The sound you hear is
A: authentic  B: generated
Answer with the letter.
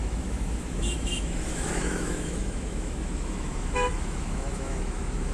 B